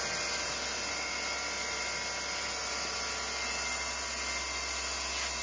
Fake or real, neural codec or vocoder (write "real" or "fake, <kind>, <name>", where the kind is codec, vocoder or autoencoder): real